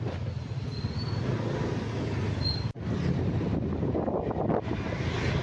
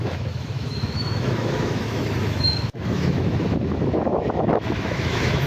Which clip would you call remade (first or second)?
second